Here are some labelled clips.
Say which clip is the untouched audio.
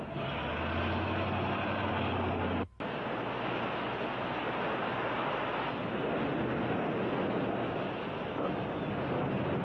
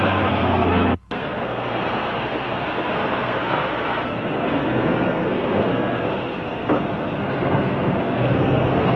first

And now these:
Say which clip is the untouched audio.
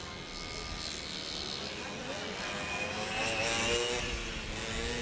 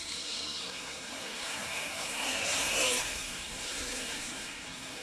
first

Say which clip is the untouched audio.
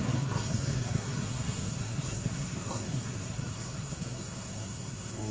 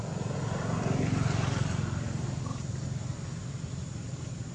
second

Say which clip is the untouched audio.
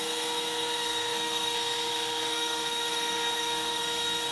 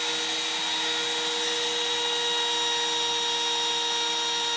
second